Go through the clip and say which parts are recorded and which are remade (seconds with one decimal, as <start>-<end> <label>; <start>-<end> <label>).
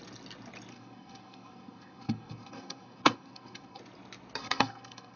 0.0-0.7 recorded; 0.7-3.8 remade; 3.8-4.4 recorded; 4.4-5.2 remade